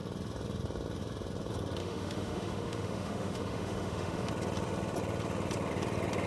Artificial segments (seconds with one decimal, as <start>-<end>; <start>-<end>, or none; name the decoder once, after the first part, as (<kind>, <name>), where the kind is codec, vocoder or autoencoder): 1.8-4.3 (autoencoder, DAC-VAE)